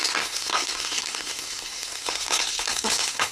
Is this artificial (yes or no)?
yes